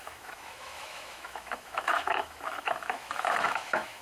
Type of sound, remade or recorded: remade